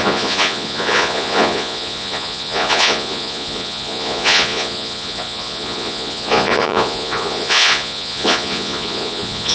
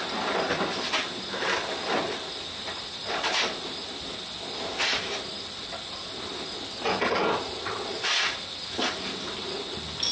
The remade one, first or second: first